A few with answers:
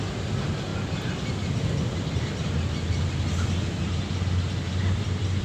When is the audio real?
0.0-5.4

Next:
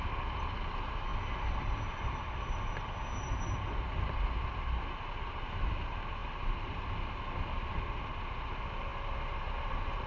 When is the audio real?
0.0-10.1

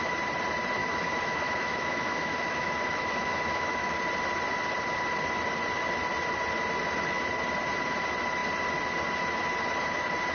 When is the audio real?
0.0-0.8; 4.0-10.3

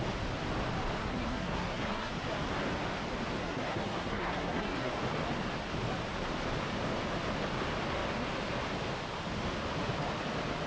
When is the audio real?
0.0-1.0; 2.1-3.4; 4.9-10.7

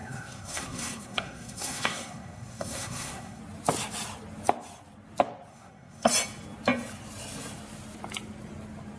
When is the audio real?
3.4-5.5; 6.1-9.0